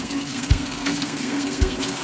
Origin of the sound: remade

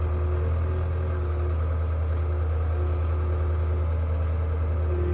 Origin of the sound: recorded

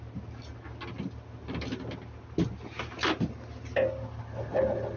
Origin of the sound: recorded